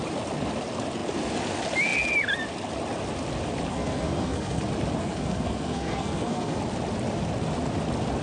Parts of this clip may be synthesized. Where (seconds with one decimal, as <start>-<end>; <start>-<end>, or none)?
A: 3.7-4.6; 5.0-6.6